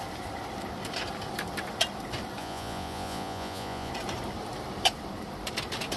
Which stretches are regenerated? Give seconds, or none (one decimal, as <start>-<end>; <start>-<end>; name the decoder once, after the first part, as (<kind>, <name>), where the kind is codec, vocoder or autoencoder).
2.4-3.9 (vocoder, Vocos)